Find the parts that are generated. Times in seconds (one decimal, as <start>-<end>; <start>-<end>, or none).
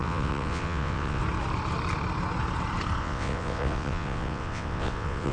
0.0-1.2; 3.0-5.3